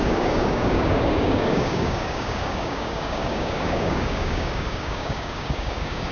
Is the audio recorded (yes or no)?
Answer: no